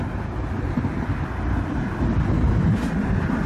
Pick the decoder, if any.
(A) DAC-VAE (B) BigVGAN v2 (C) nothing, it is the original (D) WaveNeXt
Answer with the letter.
C